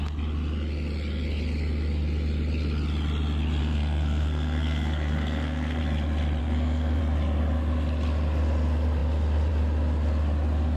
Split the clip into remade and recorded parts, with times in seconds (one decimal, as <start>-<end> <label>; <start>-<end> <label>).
0.0-3.6 recorded; 3.6-5.8 remade; 5.8-6.4 recorded; 6.4-7.0 remade; 7.0-10.8 recorded